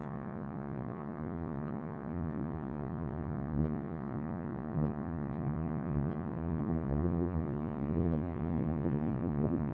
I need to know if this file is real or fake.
fake